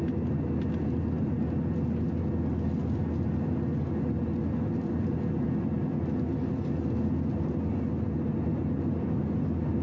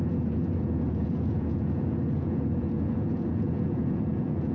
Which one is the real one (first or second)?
first